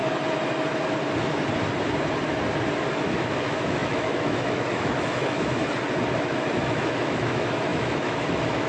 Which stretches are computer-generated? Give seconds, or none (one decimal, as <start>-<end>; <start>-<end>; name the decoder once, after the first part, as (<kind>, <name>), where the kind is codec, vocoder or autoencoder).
2.9-5.6 (autoencoder, DAC-VAE); 6.2-8.7